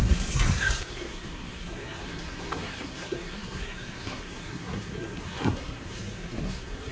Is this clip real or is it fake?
fake